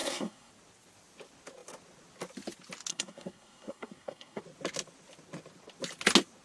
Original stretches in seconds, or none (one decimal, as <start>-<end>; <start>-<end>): 0.5-2.9; 4.4-6.4